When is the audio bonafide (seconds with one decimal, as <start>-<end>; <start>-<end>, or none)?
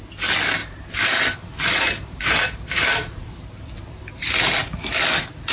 0.0-0.6; 3.3-5.5